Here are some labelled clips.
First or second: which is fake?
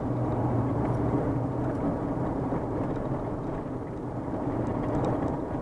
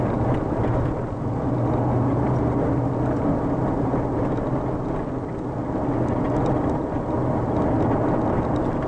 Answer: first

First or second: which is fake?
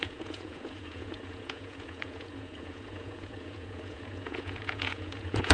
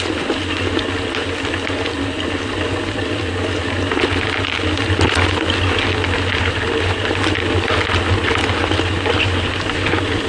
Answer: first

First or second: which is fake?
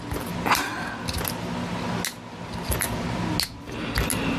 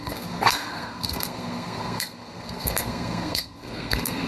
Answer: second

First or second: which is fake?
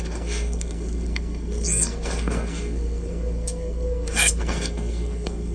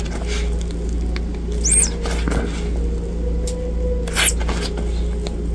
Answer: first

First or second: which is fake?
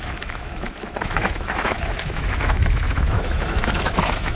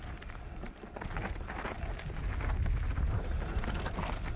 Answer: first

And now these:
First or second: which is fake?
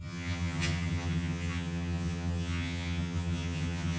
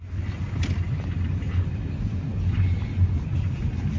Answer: first